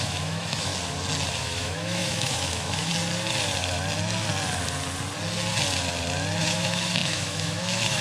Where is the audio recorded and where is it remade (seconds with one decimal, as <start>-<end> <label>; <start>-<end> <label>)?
0.0-0.7 remade; 0.7-1.4 recorded; 1.4-2.9 remade; 2.9-6.4 recorded; 6.4-8.0 remade